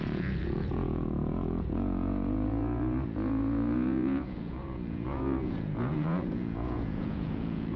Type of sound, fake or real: fake